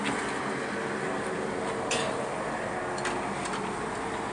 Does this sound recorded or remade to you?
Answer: recorded